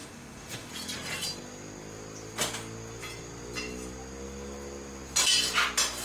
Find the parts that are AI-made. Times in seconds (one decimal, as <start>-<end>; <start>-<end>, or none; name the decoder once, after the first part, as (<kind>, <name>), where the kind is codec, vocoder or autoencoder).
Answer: 0.0-0.7 (autoencoder, DAC-VAE)